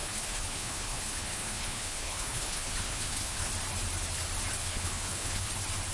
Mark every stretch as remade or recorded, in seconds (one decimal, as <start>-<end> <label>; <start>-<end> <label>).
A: 0.0-3.5 remade; 3.5-4.6 recorded; 4.6-5.5 remade; 5.5-5.9 recorded